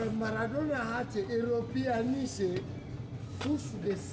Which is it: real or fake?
real